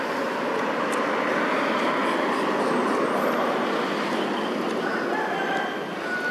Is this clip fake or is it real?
real